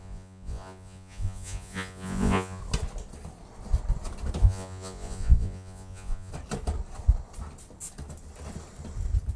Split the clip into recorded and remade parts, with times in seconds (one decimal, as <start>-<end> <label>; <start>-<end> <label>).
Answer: 0.0-2.6 remade; 2.6-4.4 recorded; 4.4-6.3 remade; 6.3-9.4 recorded